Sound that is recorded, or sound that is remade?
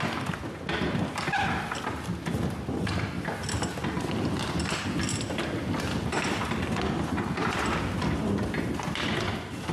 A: recorded